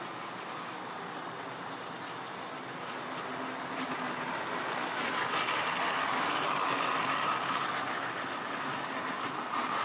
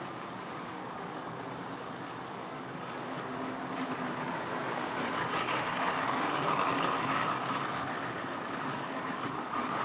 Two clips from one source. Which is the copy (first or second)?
second